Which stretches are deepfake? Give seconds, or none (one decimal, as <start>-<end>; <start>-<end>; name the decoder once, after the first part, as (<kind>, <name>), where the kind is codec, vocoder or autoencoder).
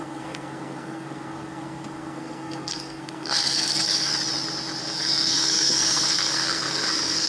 0.0-4.1 (codec, SNAC); 4.8-7.3